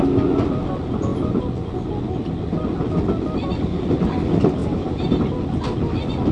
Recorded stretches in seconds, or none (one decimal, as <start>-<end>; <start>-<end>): 0.0-4.6; 5.2-6.3